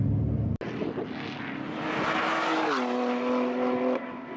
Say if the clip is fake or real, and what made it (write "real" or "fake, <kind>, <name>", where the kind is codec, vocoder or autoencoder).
real